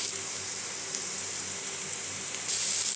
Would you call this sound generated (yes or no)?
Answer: yes